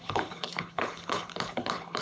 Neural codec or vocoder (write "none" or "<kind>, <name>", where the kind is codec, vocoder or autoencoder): codec, HILCodec